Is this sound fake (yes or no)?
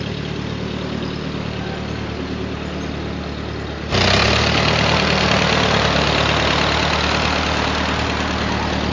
no